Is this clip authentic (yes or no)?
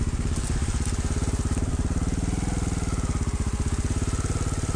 yes